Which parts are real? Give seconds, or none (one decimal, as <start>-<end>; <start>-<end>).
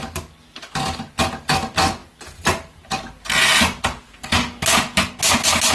0.0-5.7